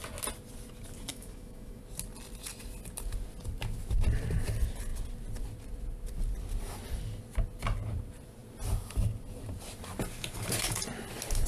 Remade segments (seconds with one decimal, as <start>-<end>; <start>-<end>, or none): 1.1-1.8